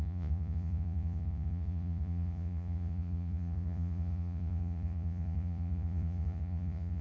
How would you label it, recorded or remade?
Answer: remade